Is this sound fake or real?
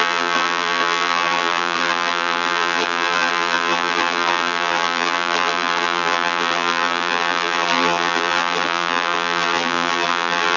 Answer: fake